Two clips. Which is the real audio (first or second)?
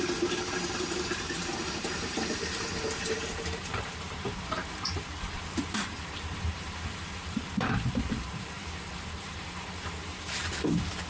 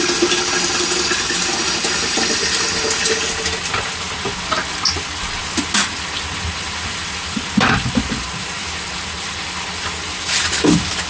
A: second